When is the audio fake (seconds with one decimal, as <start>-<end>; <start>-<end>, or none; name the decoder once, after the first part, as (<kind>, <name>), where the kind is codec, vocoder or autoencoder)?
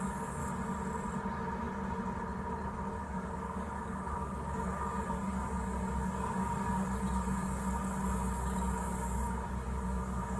0.0-0.4 (codec, DAC); 2.9-10.4